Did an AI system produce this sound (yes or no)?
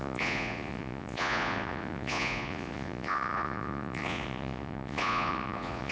yes